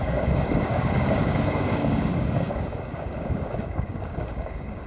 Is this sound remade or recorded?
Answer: remade